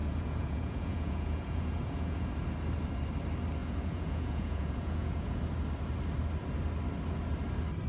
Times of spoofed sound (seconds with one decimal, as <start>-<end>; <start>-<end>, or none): 0.0-2.3; 3.6-5.4